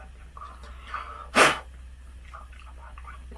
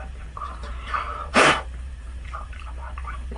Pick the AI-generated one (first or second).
second